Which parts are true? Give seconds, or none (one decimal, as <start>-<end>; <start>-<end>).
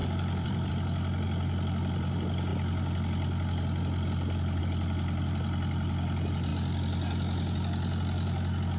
0.7-8.8